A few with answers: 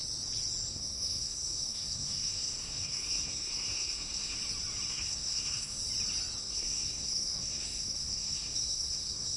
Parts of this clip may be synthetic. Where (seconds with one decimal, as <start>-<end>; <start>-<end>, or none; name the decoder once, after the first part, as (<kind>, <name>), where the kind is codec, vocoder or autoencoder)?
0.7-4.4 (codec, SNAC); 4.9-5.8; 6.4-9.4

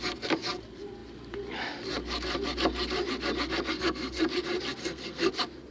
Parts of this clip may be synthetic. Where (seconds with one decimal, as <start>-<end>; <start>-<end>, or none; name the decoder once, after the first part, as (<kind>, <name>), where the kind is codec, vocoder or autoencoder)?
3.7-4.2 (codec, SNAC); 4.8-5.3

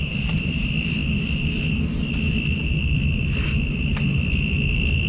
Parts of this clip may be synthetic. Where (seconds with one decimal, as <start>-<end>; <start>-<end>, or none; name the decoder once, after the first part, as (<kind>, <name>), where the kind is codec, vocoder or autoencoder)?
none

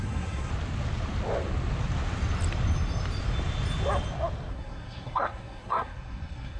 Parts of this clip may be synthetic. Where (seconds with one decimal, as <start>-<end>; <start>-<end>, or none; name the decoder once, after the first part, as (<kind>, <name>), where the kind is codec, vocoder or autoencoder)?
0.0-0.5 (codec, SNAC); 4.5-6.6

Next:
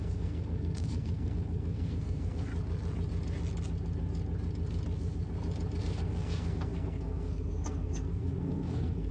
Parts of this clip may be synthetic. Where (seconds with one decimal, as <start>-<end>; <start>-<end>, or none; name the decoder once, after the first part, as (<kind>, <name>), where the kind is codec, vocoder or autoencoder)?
0.0-2.5 (codec, SNAC); 5.8-9.1